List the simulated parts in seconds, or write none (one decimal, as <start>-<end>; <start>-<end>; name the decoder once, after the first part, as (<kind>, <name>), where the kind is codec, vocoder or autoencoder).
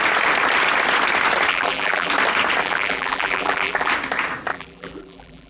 1.5-2.1 (vocoder, BigVGAN v2); 2.6-3.9; 4.5-5.5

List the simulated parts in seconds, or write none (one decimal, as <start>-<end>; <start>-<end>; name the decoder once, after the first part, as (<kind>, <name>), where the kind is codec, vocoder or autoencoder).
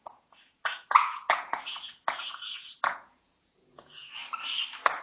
0.0-4.2 (vocoder, Vocos)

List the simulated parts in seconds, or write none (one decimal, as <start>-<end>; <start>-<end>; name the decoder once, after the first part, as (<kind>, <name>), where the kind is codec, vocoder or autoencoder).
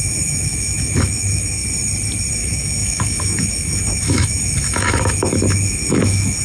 0.0-1.6 (autoencoder, DAC-VAE); 2.3-6.4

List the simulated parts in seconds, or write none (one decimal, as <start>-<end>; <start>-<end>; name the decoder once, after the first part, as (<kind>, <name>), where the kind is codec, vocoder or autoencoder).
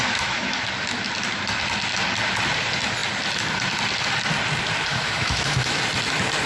0.0-0.6 (autoencoder, DAC-VAE); 4.9-5.8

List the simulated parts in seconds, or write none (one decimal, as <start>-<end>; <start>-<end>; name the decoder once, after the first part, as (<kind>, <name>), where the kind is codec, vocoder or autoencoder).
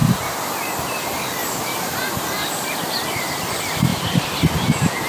0.0-3.9 (vocoder, BigVGAN v2)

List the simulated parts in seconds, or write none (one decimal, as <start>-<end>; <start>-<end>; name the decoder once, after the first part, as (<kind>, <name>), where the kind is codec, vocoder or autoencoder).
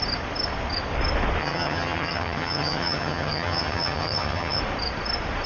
1.4-4.6 (vocoder, HiFi-GAN)